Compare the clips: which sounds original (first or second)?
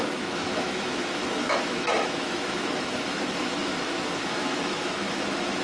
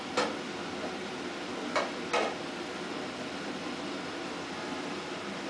second